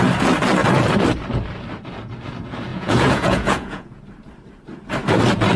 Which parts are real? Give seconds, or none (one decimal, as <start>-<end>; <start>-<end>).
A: 0.0-2.7; 4.0-5.6